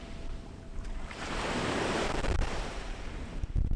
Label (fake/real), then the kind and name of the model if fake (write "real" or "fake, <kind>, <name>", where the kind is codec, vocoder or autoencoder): fake, vocoder, BigVGAN v2